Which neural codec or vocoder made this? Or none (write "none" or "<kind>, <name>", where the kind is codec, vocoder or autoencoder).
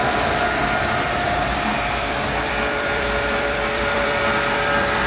vocoder, BigVGAN v2